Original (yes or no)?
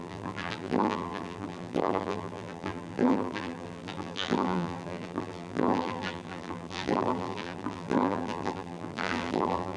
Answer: no